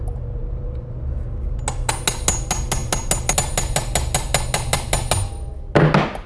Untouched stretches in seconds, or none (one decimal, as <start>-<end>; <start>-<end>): 0.0-6.3